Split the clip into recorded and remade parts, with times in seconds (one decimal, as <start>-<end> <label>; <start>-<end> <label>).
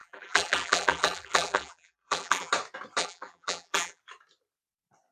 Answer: 0.0-2.5 remade; 2.5-3.0 recorded; 3.0-4.0 remade; 4.0-5.1 recorded